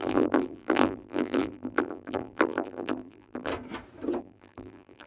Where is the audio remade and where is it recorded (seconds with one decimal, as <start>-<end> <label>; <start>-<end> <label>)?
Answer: 0.0-3.5 remade; 3.5-4.2 recorded; 4.2-5.1 remade